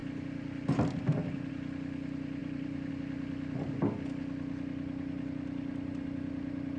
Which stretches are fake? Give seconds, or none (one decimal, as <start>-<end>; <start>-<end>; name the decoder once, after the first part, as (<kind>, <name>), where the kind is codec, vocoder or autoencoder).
2.4-2.9 (vocoder, BigVGAN v2)